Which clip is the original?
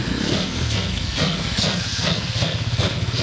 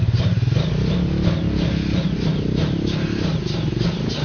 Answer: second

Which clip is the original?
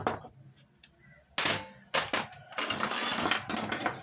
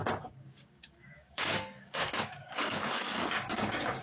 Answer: first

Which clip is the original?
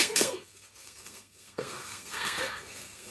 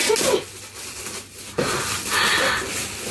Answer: second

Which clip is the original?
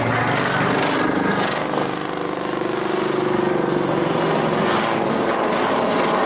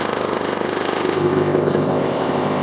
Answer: first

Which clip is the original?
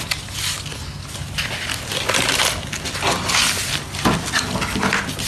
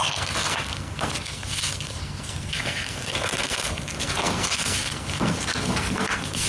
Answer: first